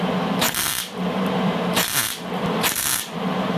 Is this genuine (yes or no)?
no